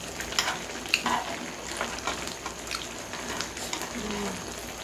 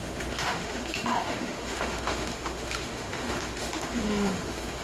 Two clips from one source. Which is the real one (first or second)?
first